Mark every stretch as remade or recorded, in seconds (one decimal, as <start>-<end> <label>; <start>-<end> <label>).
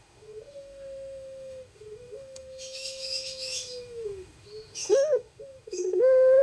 0.0-6.4 remade